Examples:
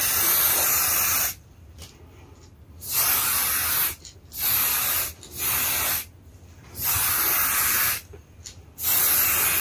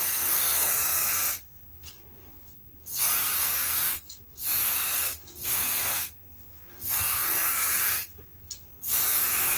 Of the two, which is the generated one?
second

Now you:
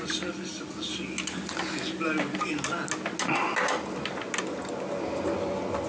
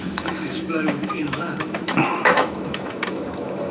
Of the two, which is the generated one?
second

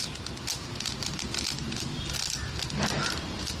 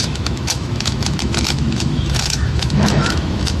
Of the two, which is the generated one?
second